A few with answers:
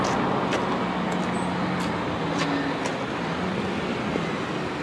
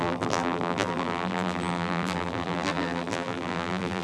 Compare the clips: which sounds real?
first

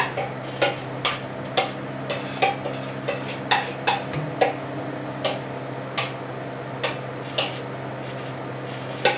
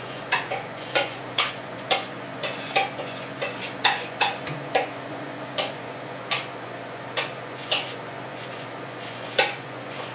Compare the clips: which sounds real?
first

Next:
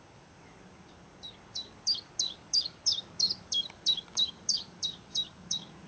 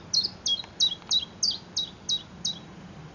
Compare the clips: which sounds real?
second